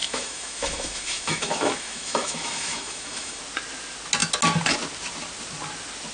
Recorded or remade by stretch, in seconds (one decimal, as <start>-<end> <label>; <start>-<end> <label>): 0.0-3.4 remade; 3.4-6.1 recorded